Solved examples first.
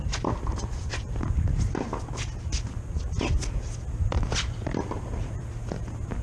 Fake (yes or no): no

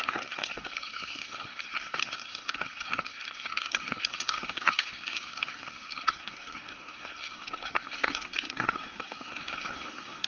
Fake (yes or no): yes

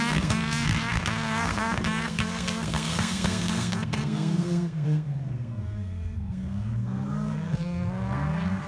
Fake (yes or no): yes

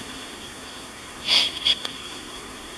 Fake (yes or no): yes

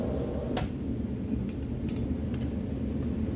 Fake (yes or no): no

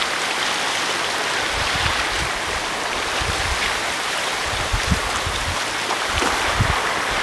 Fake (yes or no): no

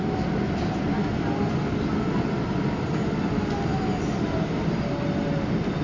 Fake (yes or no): no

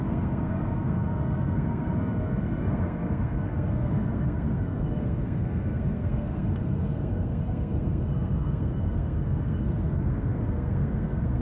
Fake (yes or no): yes